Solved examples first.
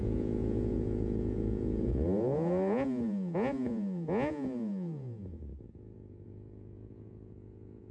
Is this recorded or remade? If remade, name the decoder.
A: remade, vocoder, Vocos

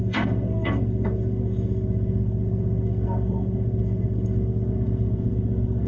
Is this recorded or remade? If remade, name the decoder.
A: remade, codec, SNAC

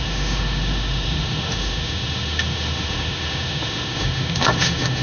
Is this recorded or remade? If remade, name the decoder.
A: remade, autoencoder, DAC-VAE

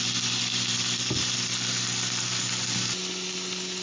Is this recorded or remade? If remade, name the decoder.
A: recorded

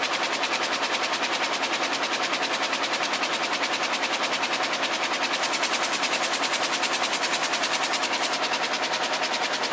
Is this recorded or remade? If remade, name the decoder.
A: recorded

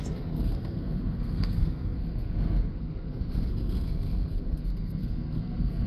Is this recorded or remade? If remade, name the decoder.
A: remade, codec, SNAC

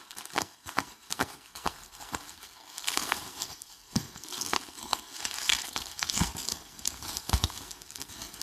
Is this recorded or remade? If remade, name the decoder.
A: remade, codec, SNAC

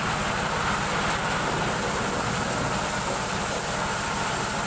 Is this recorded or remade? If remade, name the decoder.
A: recorded